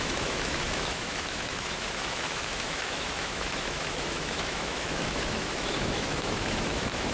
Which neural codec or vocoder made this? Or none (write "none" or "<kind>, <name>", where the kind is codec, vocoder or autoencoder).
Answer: autoencoder, DAC-VAE